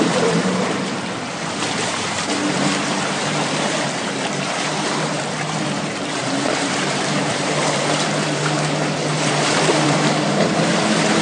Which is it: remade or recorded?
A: remade